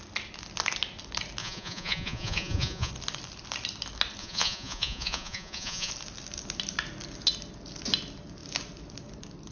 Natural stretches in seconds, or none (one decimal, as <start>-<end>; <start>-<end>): 0.0-1.4; 2.9-4.2; 5.9-9.5